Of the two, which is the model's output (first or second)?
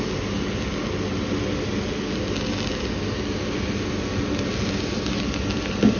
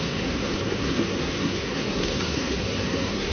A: second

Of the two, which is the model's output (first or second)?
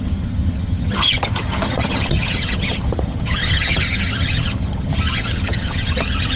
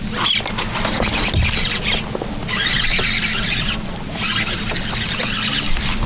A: first